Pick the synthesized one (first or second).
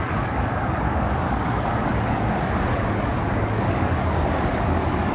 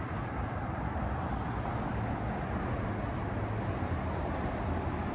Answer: first